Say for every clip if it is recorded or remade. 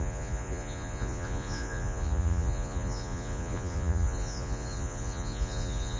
remade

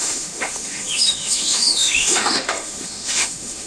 remade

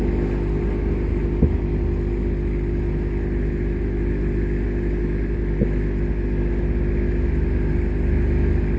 recorded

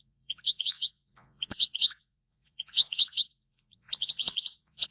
remade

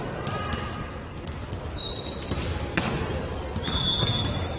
recorded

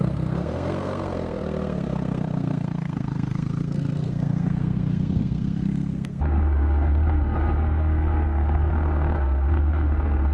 remade